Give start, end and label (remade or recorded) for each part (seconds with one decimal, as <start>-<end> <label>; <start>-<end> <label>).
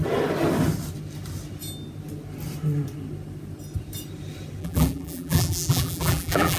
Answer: 0.0-4.6 recorded; 4.6-6.6 remade